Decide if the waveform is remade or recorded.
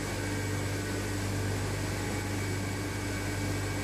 recorded